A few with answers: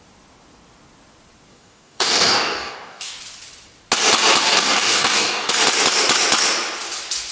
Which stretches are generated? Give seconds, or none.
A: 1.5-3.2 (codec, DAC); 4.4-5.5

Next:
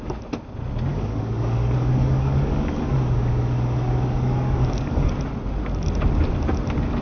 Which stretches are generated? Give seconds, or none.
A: 0.9-5.1 (codec, DAC)

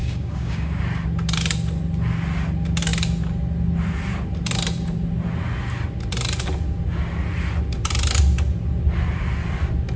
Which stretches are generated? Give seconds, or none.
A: 0.0-0.8 (codec, DAC)